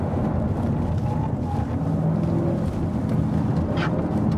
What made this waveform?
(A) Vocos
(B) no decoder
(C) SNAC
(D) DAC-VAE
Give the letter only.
B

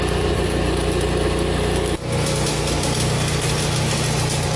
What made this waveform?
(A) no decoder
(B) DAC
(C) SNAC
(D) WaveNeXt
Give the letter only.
A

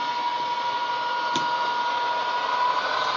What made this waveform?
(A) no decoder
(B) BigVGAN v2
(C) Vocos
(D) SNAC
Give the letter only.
A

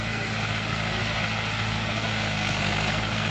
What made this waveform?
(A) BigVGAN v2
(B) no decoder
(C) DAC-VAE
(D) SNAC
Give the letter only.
D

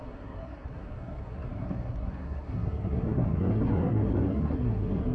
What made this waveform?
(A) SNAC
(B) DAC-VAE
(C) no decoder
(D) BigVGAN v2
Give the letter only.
A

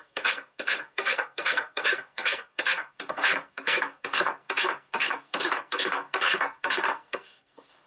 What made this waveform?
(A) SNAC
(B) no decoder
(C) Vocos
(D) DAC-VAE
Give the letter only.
A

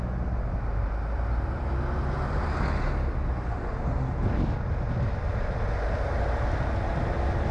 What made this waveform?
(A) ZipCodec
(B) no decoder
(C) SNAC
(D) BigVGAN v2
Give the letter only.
B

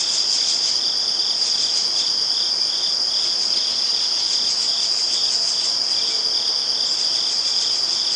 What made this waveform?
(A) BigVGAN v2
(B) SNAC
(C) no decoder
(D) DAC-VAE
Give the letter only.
C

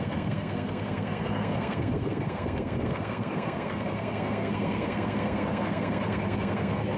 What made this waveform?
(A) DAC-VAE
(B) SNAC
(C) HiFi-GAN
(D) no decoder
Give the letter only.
B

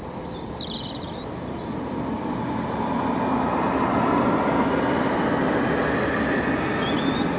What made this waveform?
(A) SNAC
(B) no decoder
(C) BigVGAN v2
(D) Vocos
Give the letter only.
B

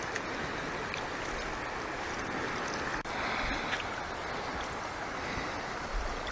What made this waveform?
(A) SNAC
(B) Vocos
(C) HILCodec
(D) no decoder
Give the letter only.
D